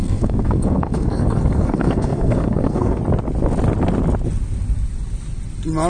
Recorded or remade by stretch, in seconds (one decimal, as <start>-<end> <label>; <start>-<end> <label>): 0.0-3.0 remade; 3.0-5.9 recorded